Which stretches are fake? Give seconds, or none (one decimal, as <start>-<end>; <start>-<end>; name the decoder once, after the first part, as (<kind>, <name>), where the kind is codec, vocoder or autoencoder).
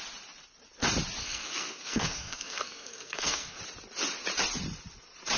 1.2-3.6 (codec, SNAC)